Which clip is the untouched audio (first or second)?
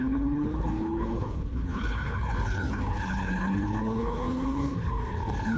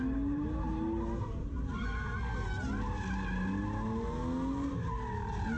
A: second